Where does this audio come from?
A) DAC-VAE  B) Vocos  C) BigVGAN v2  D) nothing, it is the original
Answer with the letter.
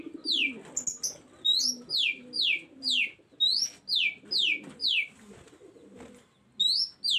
D